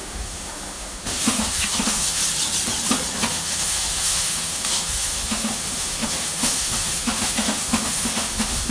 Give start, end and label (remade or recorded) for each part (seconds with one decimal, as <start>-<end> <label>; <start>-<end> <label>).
0.0-2.2 remade; 2.2-3.3 recorded; 3.3-8.7 remade